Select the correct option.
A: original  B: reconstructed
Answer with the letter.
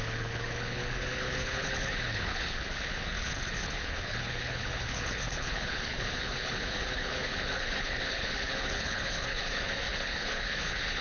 B